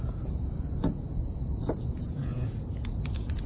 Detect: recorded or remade remade